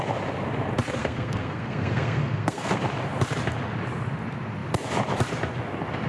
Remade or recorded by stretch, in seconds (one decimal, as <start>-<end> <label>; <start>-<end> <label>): 0.0-1.0 recorded; 1.0-2.8 remade; 2.8-6.1 recorded